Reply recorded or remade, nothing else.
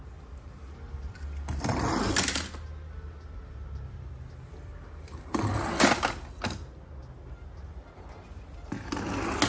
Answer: recorded